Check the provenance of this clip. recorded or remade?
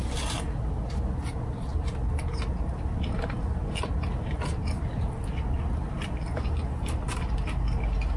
recorded